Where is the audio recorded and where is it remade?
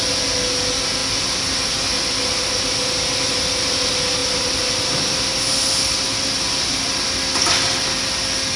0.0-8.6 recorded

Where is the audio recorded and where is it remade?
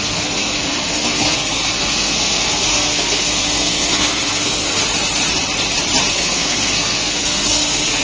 0.0-4.7 remade; 4.7-6.1 recorded; 6.1-8.0 remade